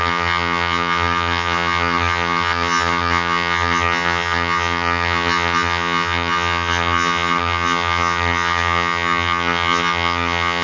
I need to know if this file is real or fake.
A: fake